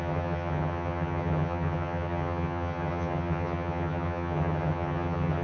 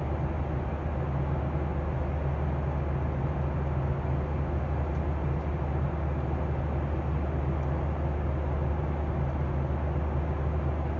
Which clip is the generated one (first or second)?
first